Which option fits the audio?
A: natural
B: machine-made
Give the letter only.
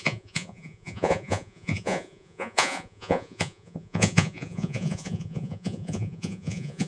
B